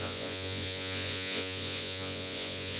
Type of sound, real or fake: fake